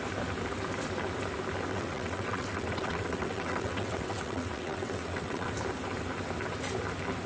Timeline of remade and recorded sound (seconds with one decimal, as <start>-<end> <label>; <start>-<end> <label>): 0.0-1.7 recorded; 1.7-5.5 remade; 5.5-7.3 recorded